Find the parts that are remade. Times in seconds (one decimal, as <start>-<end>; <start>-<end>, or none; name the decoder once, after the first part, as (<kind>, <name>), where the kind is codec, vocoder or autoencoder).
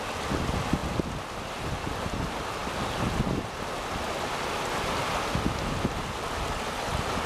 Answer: none